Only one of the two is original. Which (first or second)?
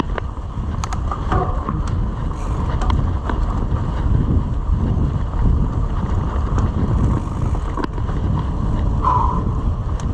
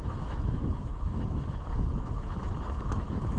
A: first